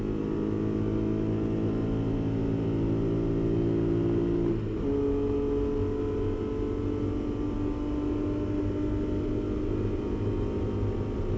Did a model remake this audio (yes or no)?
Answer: no